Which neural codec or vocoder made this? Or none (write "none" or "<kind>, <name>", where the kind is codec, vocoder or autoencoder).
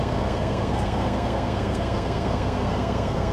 codec, SNAC